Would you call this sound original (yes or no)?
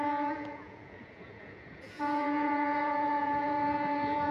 no